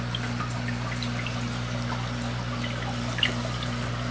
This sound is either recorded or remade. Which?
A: recorded